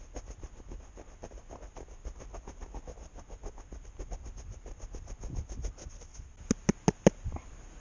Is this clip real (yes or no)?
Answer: yes